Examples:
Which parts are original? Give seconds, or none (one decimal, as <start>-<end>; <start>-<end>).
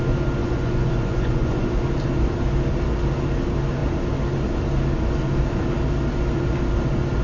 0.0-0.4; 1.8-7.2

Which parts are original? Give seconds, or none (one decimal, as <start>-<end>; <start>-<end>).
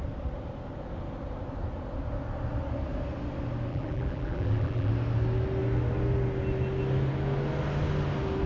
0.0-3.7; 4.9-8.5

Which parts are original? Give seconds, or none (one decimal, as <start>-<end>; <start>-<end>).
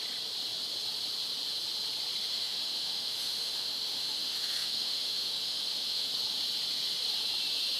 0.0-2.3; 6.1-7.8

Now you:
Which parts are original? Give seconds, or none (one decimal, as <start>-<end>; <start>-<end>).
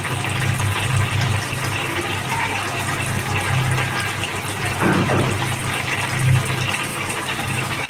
0.0-6.9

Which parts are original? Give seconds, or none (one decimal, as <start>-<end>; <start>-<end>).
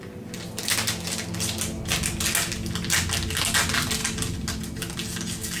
0.0-5.6